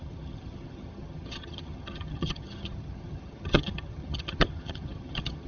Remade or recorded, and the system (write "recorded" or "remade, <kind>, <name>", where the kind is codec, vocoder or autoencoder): remade, vocoder, HiFi-GAN